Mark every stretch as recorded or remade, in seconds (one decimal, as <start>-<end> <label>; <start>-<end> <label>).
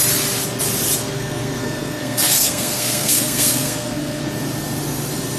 0.0-1.0 recorded; 1.0-4.2 remade; 4.2-5.4 recorded